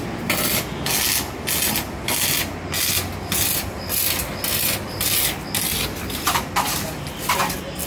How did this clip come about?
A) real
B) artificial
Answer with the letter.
A